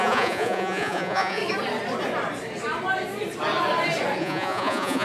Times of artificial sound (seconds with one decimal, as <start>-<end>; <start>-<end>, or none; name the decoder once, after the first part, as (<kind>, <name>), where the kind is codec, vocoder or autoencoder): 0.0-1.4 (vocoder, Vocos); 4.2-5.0